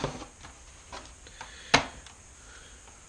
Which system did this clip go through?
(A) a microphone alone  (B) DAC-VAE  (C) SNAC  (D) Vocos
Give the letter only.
A